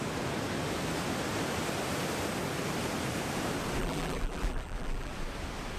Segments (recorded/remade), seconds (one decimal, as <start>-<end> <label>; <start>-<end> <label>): 0.0-3.8 recorded; 3.8-5.1 remade; 5.1-5.8 recorded